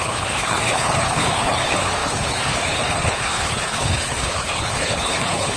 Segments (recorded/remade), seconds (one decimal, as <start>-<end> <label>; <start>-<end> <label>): 0.0-5.6 remade